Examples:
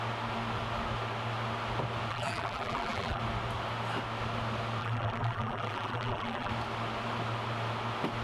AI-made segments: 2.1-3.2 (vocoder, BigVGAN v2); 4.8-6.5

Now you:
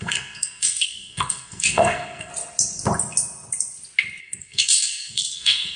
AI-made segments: 0.0-2.3 (codec, SNAC); 4.2-5.8

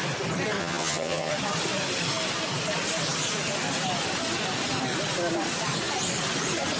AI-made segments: 0.6-1.3 (vocoder, HiFi-GAN)